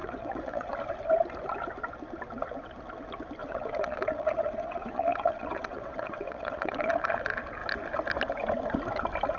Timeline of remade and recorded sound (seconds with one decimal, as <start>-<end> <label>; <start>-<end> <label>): 0.0-0.7 remade; 0.7-3.4 recorded; 3.4-6.9 remade; 6.9-9.4 recorded